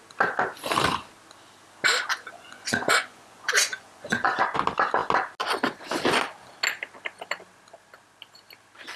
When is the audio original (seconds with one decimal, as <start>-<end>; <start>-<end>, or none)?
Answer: 0.0-2.1; 4.4-9.0